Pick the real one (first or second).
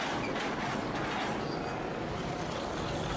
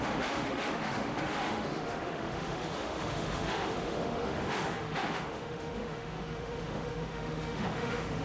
first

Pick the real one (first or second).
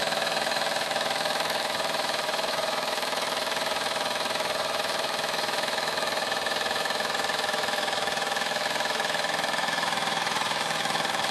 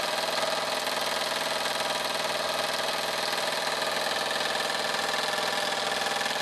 second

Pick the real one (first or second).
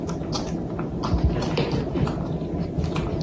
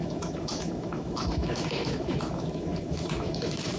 first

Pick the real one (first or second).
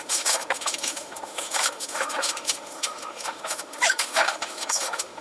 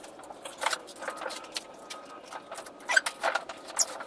second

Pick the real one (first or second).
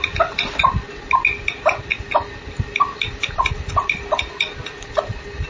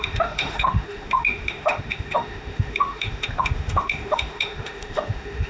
first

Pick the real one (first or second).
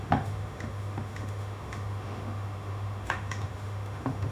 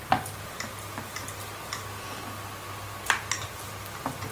second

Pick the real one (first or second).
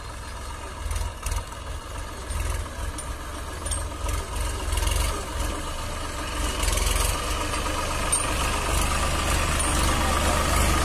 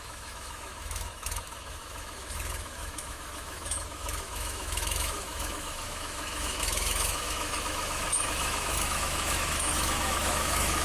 first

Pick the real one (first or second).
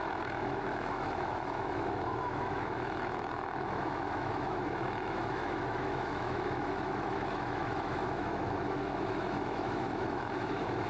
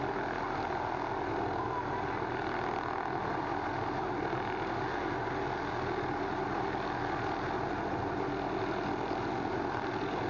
second